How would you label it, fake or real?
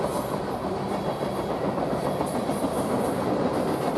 real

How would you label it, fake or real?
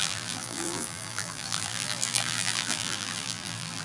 fake